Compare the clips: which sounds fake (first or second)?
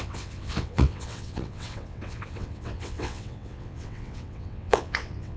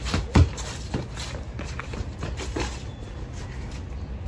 first